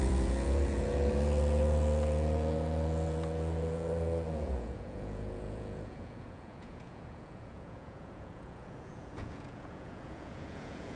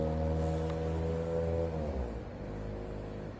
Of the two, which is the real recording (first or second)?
second